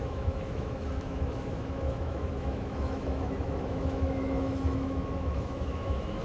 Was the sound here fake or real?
fake